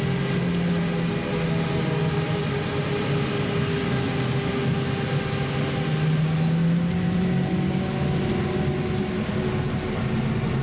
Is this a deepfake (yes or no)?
no